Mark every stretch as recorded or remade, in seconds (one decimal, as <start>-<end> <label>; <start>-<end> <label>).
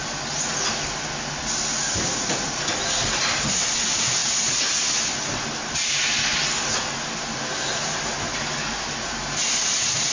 0.0-10.1 recorded